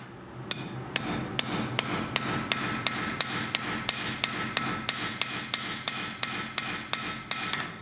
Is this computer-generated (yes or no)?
no